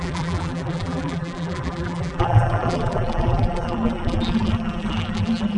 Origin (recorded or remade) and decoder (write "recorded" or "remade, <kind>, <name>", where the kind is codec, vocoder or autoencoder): remade, vocoder, BigVGAN v2